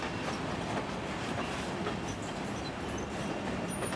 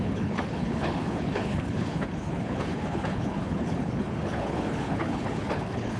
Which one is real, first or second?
first